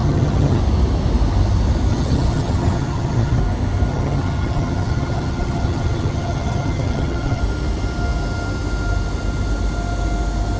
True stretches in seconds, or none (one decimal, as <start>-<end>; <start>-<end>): 0.6-1.9; 3.4-3.9; 7.4-10.6